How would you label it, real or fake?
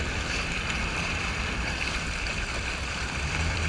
fake